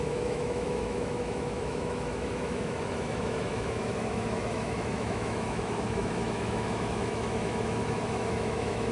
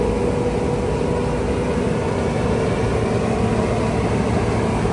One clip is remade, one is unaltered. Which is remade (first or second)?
first